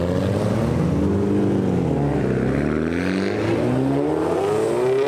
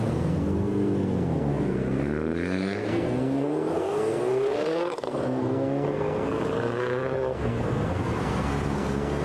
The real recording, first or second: first